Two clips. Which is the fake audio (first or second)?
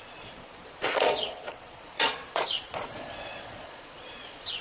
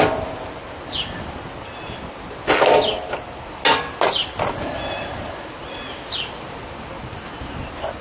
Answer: first